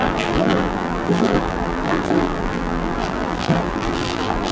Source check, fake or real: fake